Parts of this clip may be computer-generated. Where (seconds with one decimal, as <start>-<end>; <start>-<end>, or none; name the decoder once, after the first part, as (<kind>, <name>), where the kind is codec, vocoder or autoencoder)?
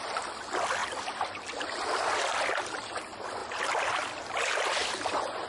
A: 3.4-4.2 (vocoder, BigVGAN v2)